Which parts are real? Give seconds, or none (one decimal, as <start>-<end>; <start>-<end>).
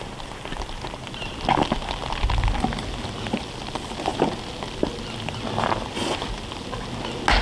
0.0-7.4